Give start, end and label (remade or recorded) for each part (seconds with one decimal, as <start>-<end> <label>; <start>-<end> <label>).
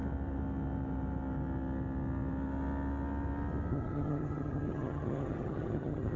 0.0-3.7 recorded; 3.7-6.2 remade